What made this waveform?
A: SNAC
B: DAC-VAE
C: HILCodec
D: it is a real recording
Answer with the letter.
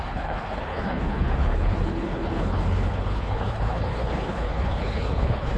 C